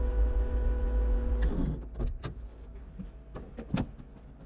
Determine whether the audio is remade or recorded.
recorded